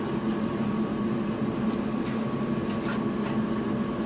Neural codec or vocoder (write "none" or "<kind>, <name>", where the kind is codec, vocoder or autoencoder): none